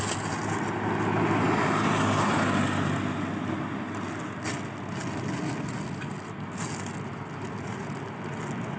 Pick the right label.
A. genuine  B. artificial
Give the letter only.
A